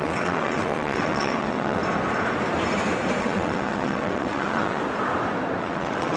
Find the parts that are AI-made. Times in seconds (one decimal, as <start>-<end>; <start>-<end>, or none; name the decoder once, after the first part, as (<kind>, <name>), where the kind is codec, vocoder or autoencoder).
0.0-1.8 (vocoder, WaveNeXt); 3.2-4.8; 5.6-6.2

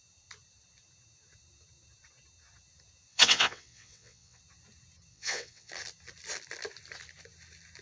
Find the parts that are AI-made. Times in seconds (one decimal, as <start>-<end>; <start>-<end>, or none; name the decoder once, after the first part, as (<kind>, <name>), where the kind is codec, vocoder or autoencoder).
3.1-4.4 (vocoder, WaveNeXt); 5.1-5.7

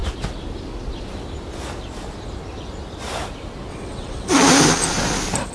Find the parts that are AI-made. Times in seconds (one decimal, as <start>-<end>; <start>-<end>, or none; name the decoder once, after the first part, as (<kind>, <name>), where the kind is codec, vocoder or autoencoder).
3.7-4.3 (vocoder, WaveNeXt)

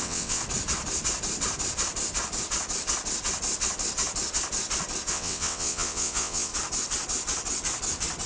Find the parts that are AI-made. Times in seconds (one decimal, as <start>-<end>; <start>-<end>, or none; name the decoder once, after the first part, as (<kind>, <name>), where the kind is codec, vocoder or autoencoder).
0.0-0.4 (vocoder, WaveNeXt); 5.1-6.5